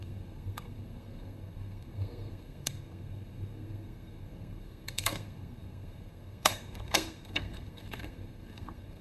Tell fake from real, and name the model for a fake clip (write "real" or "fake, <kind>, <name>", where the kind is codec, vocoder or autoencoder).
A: fake, codec, SNAC